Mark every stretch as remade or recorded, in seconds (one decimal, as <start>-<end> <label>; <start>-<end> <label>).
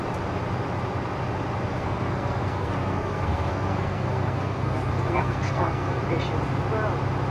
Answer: 0.0-1.7 recorded; 1.7-6.0 remade; 6.0-7.3 recorded